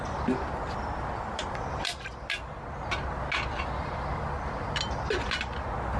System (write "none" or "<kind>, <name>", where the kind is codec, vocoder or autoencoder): none